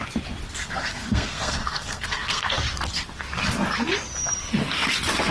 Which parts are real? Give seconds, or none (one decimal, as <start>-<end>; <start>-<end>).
0.0-0.6; 2.5-5.3